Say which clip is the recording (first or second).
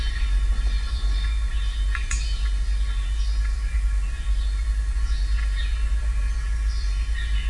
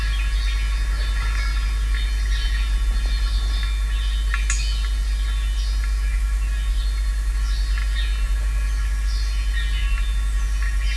second